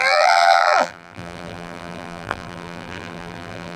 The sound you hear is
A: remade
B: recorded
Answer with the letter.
A